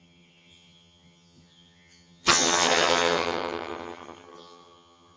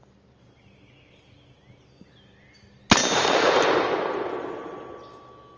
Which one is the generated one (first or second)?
first